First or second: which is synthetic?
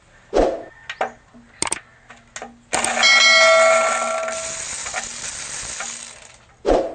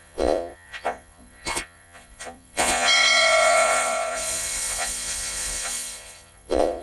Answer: second